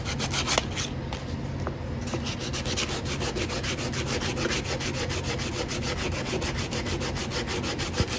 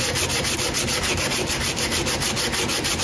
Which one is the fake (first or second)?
second